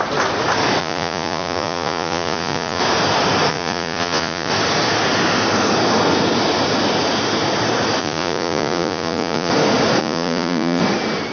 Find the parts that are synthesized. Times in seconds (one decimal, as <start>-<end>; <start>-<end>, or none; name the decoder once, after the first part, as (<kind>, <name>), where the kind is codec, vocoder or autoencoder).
0.8-2.8 (vocoder, Vocos); 3.5-4.5; 8.0-9.5; 10.0-10.8

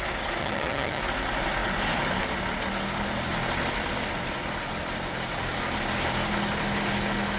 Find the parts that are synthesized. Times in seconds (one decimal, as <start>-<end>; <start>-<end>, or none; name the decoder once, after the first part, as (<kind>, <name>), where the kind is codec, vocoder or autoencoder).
0.4-1.0 (vocoder, HiFi-GAN)

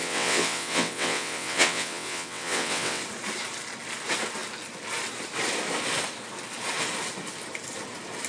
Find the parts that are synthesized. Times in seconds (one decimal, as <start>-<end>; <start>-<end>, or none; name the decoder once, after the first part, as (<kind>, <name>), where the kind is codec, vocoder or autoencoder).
0.0-3.0 (vocoder, WaveNeXt)